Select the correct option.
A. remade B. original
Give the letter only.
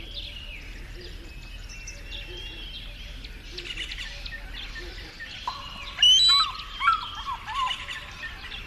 B